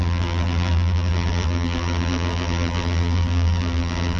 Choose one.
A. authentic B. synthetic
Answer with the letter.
B